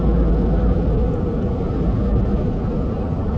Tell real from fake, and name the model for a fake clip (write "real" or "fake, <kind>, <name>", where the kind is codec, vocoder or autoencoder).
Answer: real